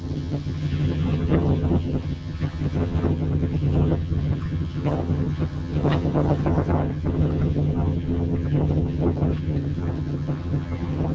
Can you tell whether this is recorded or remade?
remade